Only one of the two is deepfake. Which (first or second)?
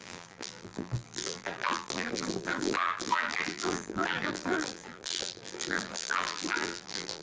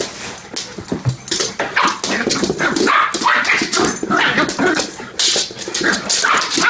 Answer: first